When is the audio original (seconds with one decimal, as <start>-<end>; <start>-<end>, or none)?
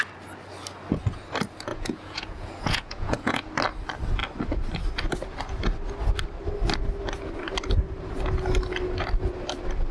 0.0-1.7; 3.4-9.9